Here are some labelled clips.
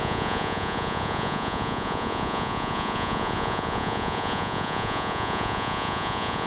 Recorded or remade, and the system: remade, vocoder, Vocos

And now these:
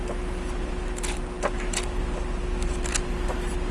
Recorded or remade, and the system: recorded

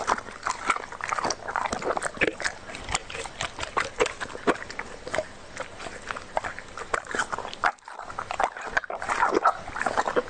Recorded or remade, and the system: recorded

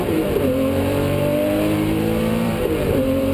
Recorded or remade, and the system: remade, vocoder, BigVGAN v2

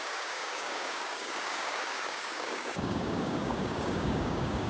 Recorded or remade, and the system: remade, codec, DAC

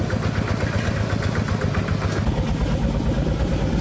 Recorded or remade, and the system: recorded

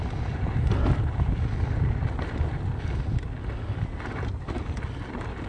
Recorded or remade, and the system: recorded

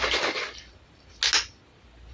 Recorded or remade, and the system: recorded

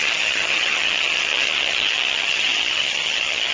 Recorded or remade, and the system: remade, vocoder, HiFi-GAN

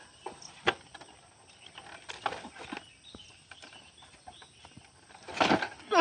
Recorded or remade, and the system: recorded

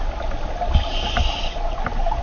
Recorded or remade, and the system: recorded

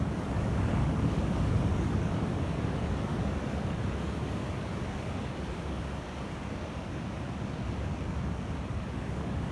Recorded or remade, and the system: remade, codec, DAC